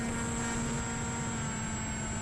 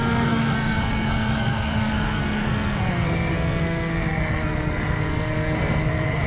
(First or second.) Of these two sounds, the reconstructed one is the second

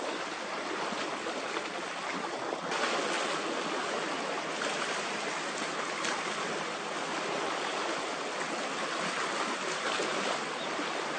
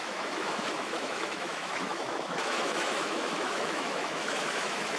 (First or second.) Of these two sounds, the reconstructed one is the second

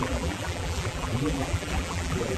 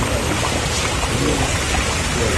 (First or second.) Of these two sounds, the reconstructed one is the first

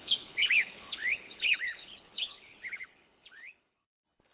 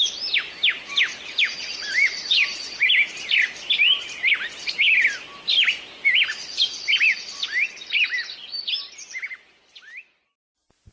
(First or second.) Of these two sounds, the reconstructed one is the first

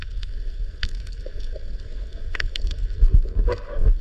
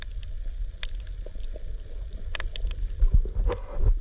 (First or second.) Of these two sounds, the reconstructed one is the first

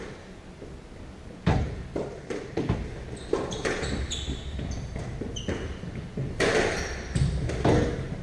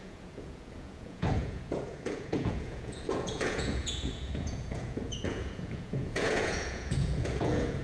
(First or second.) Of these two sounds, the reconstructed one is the second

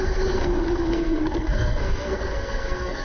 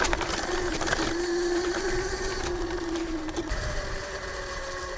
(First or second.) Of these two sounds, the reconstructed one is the first